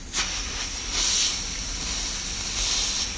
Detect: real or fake real